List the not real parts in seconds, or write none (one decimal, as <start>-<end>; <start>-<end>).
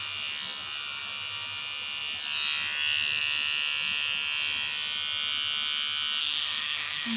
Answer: 6.2-7.2